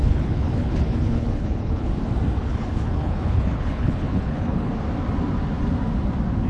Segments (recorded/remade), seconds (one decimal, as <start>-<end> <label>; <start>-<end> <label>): 0.0-1.9 remade; 1.9-2.4 recorded; 2.4-4.7 remade; 4.7-6.5 recorded